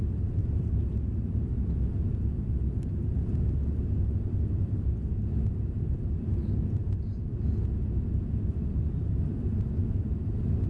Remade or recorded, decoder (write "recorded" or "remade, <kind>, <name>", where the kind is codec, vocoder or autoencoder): recorded